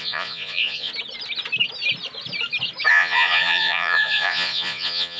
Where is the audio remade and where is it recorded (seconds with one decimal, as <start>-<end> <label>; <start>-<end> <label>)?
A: 0.0-0.9 remade; 0.9-2.9 recorded; 2.9-5.2 remade